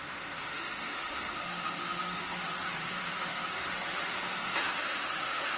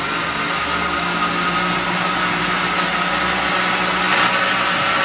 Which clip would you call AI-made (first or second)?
first